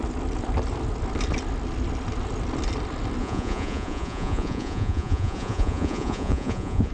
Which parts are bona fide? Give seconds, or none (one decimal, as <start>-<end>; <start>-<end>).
0.0-3.2